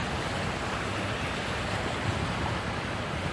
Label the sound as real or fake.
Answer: real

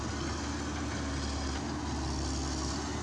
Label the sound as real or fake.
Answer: real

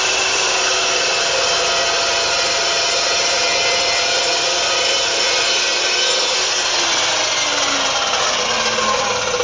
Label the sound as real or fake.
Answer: real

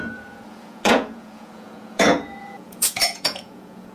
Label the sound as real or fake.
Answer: fake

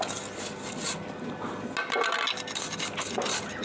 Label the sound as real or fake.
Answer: real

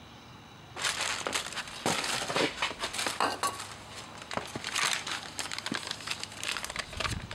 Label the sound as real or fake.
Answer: real